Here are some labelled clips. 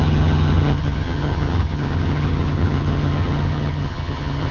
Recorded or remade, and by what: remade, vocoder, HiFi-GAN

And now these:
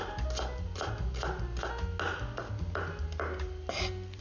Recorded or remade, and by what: recorded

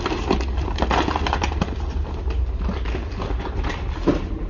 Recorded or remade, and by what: recorded